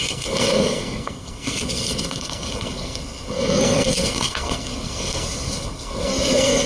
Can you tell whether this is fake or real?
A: fake